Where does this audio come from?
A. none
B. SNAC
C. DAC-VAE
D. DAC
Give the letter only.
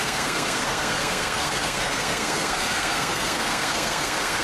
B